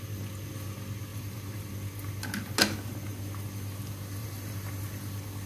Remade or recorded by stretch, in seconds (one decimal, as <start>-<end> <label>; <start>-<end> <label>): 0.0-1.1 recorded; 1.1-1.7 remade; 1.7-4.2 recorded; 4.2-4.7 remade; 4.7-5.5 recorded